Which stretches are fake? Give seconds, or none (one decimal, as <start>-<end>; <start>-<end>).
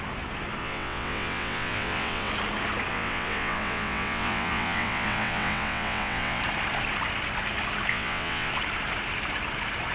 0.6-2.3; 2.9-6.4; 7.9-8.5